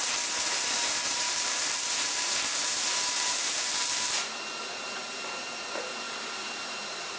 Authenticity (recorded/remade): remade